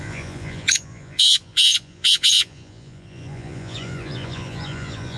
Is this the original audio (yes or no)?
no